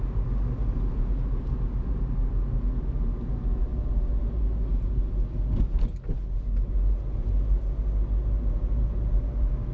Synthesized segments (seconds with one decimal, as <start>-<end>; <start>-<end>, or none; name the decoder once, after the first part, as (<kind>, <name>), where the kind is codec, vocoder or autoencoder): none